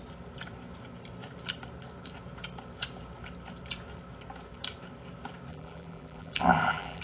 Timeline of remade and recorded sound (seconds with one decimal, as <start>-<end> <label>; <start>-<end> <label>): 0.0-5.5 recorded; 5.5-7.0 remade